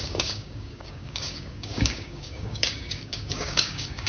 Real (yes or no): no